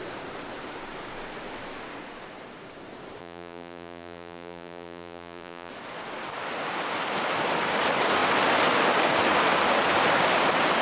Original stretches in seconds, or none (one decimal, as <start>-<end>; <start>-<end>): 0.0-3.2; 5.7-10.8